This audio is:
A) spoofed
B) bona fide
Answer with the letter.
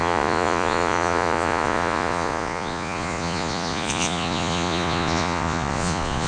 A